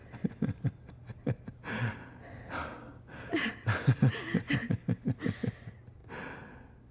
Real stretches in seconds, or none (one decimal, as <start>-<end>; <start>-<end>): 0.0-6.9